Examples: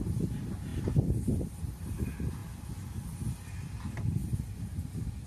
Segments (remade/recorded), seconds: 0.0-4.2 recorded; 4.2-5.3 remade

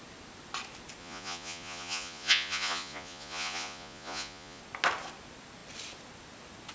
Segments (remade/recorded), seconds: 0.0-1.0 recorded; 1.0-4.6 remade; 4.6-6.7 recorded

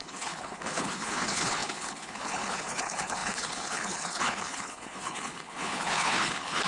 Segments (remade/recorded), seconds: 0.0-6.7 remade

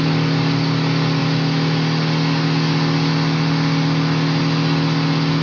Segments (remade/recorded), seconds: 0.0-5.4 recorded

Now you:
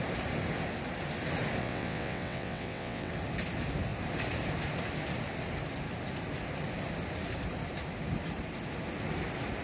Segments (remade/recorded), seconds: 0.0-1.6 recorded; 1.6-3.1 remade; 3.1-9.6 recorded

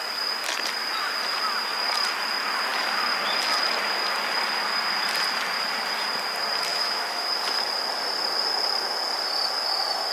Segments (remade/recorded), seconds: 0.0-6.7 recorded; 6.7-7.3 remade; 7.3-10.1 recorded